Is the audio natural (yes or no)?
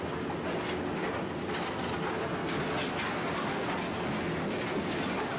yes